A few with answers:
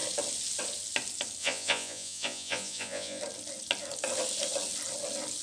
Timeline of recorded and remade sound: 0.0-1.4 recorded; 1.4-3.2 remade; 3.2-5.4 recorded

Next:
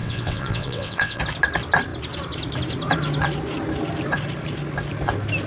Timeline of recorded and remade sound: 0.0-1.2 remade; 1.2-5.5 recorded

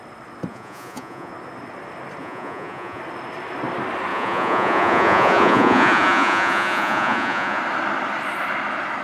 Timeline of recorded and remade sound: 0.0-0.5 recorded; 0.5-1.3 remade; 1.3-2.2 recorded; 2.2-3.0 remade; 3.0-4.1 recorded; 4.1-7.6 remade; 7.6-9.0 recorded